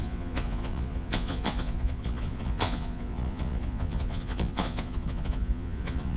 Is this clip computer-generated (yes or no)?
yes